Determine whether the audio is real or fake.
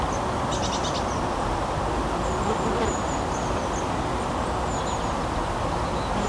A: real